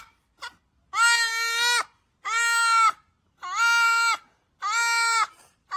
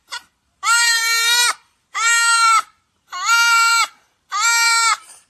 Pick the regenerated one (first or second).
second